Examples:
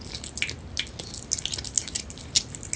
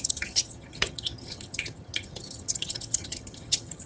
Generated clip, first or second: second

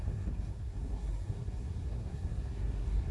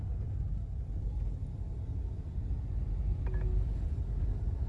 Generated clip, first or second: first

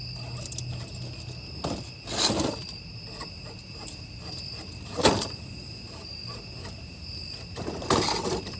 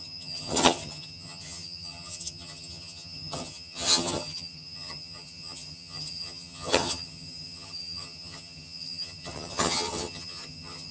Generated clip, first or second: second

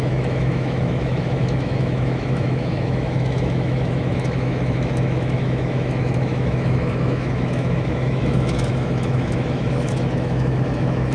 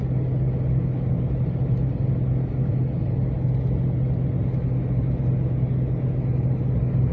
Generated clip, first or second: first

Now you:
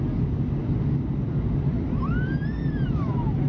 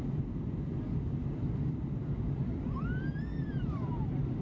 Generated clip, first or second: second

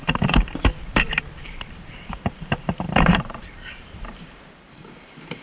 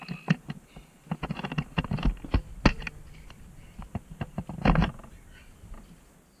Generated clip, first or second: first